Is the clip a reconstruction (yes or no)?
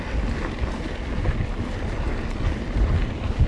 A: no